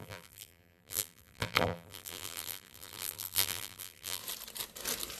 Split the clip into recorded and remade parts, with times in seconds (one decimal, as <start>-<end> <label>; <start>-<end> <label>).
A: 0.0-4.2 remade; 4.2-5.2 recorded